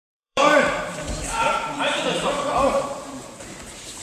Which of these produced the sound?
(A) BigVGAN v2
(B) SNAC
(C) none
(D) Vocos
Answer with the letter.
A